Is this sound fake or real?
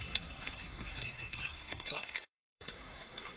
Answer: fake